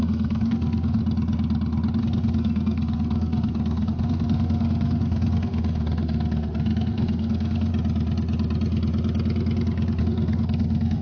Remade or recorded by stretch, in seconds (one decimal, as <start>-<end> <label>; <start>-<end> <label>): 0.0-1.0 remade; 1.0-2.0 recorded; 2.0-7.7 remade; 7.7-10.0 recorded; 10.0-11.0 remade